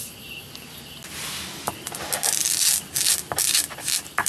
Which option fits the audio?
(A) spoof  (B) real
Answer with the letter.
B